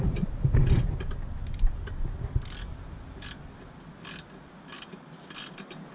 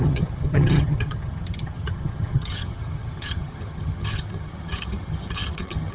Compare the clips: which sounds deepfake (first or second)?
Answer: second